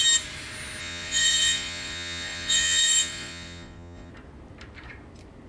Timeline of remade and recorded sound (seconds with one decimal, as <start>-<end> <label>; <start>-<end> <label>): 0.0-0.8 recorded; 0.8-4.1 remade; 4.1-5.5 recorded